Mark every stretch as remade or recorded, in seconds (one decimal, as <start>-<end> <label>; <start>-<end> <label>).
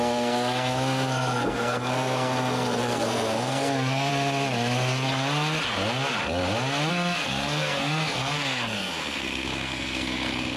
0.0-4.1 remade; 4.1-6.9 recorded; 6.9-10.6 remade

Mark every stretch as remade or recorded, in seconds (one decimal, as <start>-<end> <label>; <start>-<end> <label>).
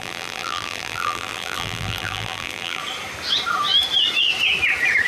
0.0-2.8 remade; 2.8-5.1 recorded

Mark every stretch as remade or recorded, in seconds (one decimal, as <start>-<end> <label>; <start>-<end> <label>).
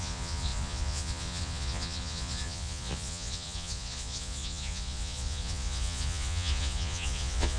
0.0-7.6 remade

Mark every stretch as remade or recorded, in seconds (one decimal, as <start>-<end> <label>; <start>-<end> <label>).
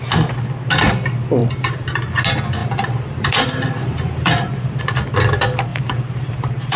0.0-1.4 recorded; 1.4-2.0 remade; 2.0-2.6 recorded; 2.6-4.8 remade; 4.8-5.7 recorded; 5.7-6.8 remade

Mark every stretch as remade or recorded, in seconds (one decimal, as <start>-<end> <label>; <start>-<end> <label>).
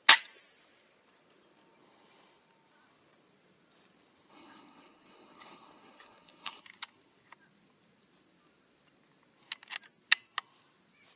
0.0-4.3 recorded; 4.3-6.6 remade; 6.6-11.2 recorded